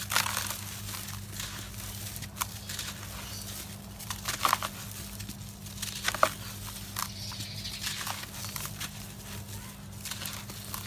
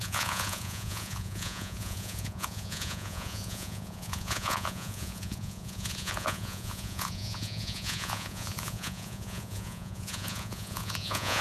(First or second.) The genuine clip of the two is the first